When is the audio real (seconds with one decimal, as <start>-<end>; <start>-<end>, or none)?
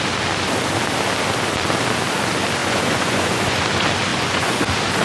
0.0-2.6; 3.6-4.1; 4.6-5.0